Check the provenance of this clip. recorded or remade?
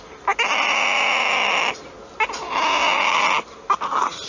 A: recorded